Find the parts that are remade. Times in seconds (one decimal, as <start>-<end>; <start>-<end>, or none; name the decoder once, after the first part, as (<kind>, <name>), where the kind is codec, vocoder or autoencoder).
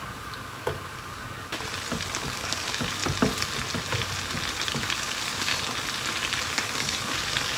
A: 0.0-1.5 (codec, DAC); 2.2-3.0; 4.7-5.5; 6.5-7.6